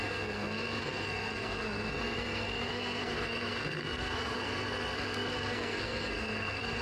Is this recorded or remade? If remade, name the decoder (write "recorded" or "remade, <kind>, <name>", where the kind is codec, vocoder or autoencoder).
remade, codec, SNAC